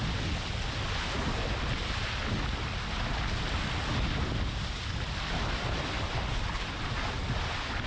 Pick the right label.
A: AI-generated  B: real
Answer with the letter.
B